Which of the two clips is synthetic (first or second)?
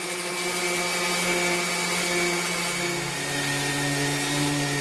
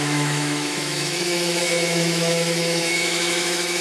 second